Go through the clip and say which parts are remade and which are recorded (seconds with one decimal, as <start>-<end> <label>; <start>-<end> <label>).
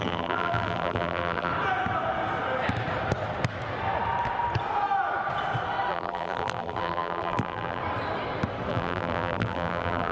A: 0.0-1.5 remade; 1.5-5.9 recorded; 5.9-7.8 remade; 7.8-8.7 recorded; 8.7-10.1 remade